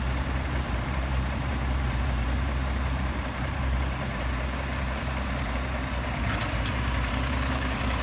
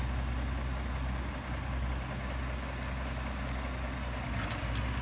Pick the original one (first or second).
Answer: second